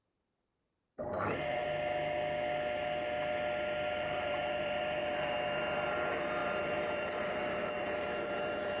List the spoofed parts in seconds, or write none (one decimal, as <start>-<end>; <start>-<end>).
0.0-1.6; 4.0-8.8